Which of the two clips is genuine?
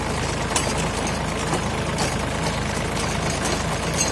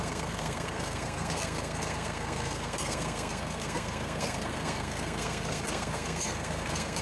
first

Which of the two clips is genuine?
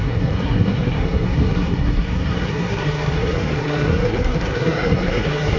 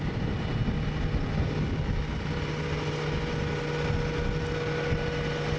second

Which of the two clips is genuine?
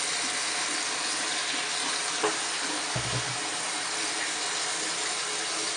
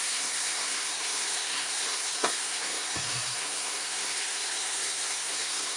first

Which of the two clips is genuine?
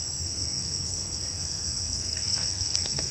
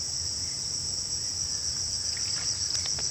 second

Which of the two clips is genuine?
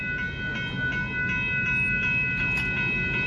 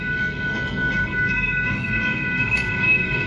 first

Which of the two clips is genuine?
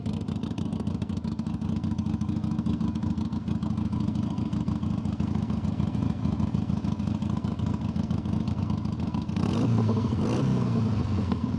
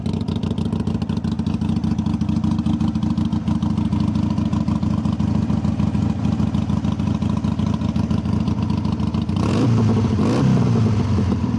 second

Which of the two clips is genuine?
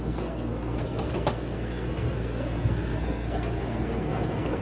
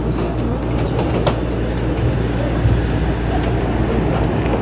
second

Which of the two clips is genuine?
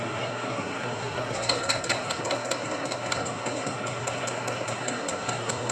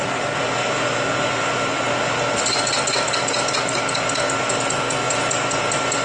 second